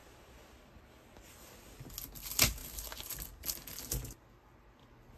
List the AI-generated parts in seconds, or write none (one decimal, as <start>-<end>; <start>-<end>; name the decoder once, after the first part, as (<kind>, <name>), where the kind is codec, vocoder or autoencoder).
none